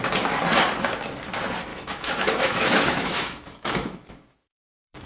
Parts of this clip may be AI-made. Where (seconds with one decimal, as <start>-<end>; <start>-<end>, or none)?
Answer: 1.7-5.1